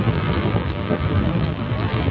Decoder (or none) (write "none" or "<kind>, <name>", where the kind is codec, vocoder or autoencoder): vocoder, BigVGAN v2